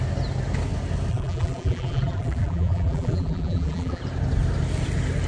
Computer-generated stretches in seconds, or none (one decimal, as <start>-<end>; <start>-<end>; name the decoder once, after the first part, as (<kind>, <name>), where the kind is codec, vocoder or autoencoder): 1.1-4.0 (vocoder, BigVGAN v2)